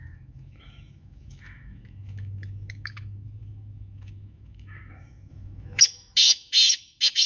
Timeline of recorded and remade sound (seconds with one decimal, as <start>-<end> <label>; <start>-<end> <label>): 0.0-7.3 remade